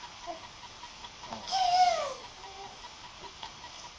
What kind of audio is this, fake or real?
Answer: fake